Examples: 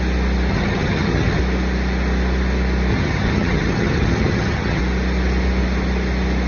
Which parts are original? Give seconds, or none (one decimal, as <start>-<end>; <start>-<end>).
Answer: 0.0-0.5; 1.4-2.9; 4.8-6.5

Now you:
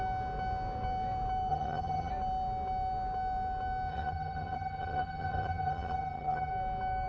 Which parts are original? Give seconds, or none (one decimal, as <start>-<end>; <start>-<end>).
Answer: 0.0-1.5; 2.1-3.9; 6.5-7.1

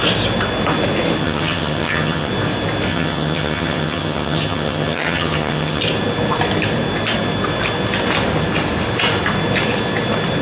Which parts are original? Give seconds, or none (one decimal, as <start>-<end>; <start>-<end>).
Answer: 0.0-1.2; 2.3-2.9; 5.8-10.4